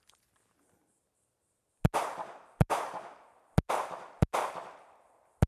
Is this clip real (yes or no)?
yes